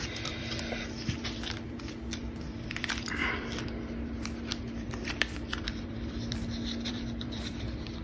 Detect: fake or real fake